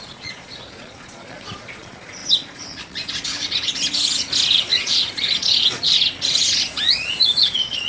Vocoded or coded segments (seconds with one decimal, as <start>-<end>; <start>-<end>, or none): 0.0-7.9